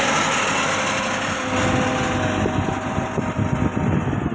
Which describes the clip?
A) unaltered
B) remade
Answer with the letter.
A